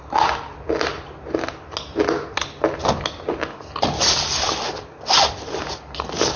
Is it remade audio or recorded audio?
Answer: recorded